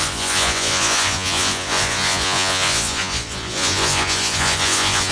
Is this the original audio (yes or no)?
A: no